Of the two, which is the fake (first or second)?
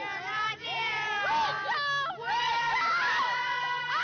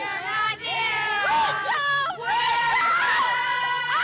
second